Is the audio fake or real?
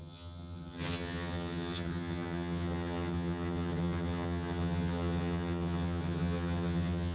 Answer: fake